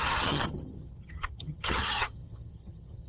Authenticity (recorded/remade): remade